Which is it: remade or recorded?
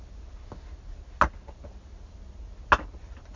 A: recorded